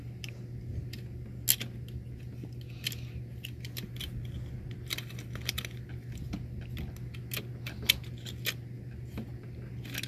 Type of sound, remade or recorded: recorded